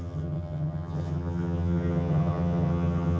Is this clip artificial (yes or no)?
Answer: yes